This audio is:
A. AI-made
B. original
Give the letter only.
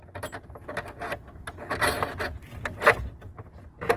B